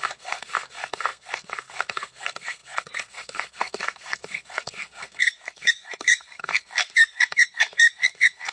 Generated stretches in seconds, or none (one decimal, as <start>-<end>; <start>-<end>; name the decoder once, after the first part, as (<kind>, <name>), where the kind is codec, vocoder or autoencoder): 0.0-8.5 (codec, SNAC)